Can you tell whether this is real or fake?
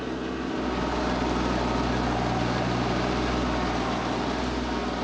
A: real